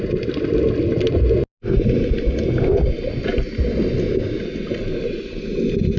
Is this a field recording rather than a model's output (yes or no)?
yes